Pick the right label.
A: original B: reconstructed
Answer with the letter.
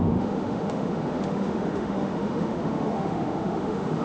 B